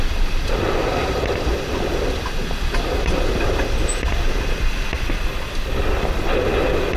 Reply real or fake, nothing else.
fake